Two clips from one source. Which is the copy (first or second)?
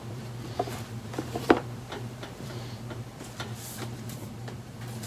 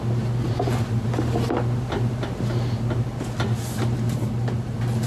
first